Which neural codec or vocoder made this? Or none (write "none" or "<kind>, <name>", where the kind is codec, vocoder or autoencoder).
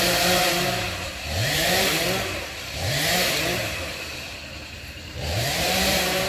vocoder, BigVGAN v2